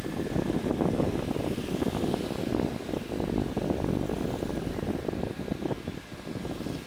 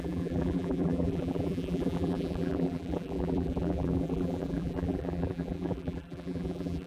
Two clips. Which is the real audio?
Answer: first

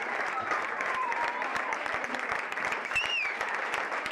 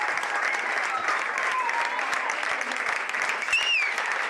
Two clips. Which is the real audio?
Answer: second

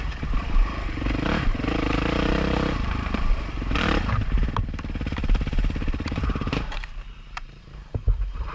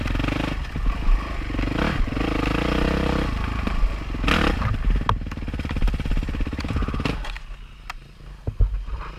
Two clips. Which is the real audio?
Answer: second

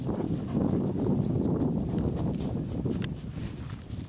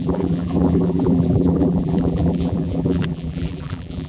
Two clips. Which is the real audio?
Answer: first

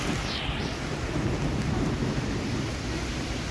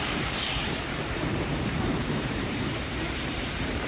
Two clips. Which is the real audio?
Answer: first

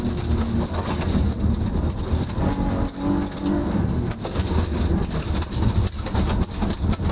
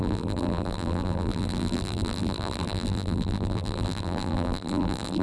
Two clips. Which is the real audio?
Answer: first